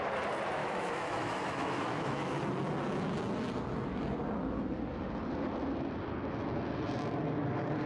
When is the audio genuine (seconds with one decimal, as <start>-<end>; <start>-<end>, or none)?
0.0-0.6; 2.4-7.9